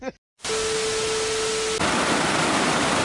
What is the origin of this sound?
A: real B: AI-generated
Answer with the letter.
A